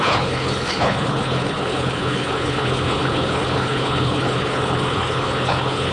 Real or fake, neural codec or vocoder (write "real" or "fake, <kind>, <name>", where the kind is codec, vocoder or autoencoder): fake, codec, HILCodec